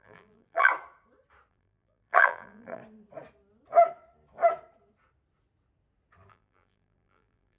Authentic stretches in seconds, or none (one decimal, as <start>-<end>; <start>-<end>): 0.7-1.5; 2.8-6.3